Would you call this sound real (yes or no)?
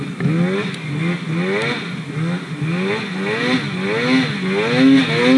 yes